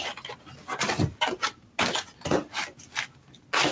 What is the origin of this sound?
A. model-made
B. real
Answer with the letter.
B